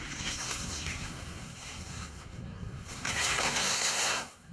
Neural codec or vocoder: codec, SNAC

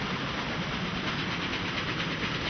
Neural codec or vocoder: none